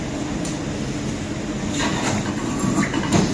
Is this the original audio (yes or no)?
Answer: yes